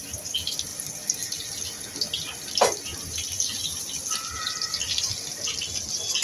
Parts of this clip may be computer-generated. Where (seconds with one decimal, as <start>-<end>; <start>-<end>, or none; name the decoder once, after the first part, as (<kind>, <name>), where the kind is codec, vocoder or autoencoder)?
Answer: none